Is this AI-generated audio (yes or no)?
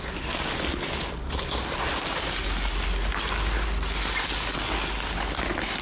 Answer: no